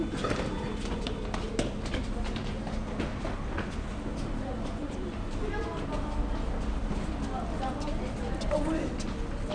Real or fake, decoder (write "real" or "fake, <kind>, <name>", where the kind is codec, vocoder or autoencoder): real